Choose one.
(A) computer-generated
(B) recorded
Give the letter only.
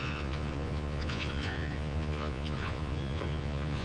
A